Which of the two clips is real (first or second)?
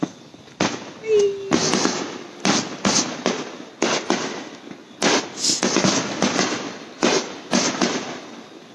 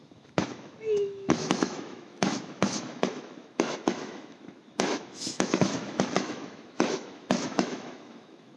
first